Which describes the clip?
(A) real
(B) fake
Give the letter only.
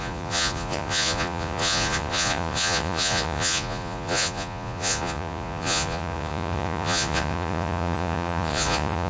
B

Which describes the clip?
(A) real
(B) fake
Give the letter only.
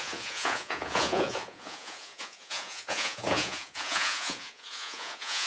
B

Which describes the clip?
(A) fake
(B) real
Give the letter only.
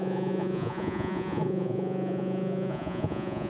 A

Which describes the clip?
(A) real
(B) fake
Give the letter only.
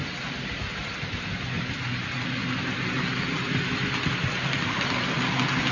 A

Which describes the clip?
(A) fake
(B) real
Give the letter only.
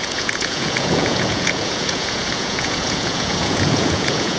A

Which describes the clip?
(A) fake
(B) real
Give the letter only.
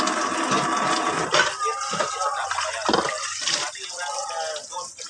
B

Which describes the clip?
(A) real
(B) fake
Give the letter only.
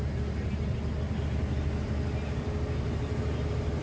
A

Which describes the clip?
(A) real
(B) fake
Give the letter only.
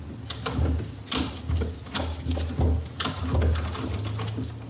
A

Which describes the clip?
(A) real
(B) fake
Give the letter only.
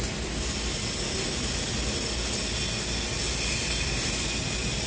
A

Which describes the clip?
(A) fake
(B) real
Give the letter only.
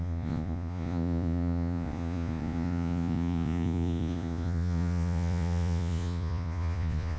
A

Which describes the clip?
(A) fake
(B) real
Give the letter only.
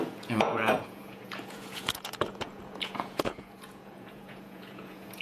A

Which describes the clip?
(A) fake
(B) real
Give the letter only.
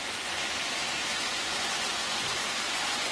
A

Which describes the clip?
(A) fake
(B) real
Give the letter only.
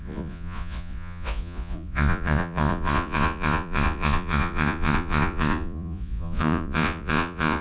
A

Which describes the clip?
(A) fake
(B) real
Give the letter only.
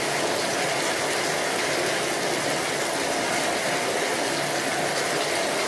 B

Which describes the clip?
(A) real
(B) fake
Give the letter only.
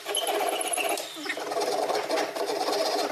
A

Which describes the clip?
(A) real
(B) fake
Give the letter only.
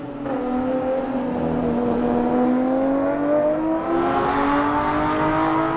A